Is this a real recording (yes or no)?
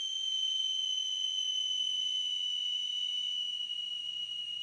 no